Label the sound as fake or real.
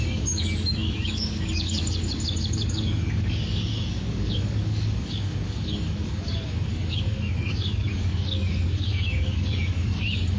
fake